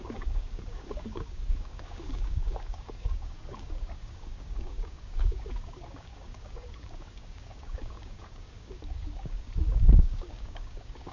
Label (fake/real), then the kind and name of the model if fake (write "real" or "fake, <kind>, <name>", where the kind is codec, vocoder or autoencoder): fake, codec, DAC